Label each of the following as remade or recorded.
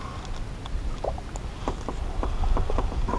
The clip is recorded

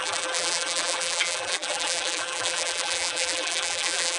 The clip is remade